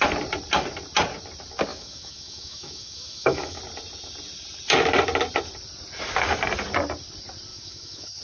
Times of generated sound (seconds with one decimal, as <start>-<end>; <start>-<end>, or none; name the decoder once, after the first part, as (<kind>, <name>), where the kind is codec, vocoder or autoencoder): 1.7-3.6 (autoencoder, DAC-VAE); 7.5-8.2